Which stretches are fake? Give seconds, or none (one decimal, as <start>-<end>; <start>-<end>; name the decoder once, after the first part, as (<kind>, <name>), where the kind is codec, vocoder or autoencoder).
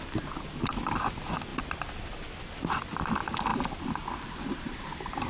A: none